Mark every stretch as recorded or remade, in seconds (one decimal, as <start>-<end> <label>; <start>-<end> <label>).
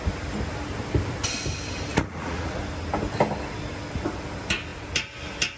0.0-1.9 recorded; 1.9-2.6 remade; 2.6-5.6 recorded